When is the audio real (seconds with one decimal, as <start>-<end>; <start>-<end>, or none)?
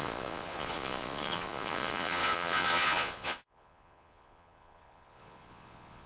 none